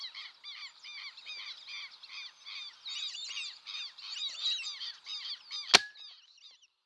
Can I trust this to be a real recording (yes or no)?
yes